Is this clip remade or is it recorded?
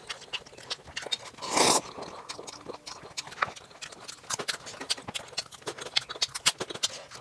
recorded